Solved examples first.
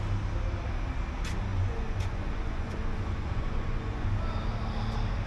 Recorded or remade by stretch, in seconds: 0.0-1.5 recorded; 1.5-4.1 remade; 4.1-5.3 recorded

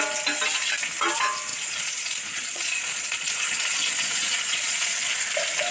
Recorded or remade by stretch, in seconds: 0.0-1.5 recorded; 1.5-4.9 remade; 4.9-5.7 recorded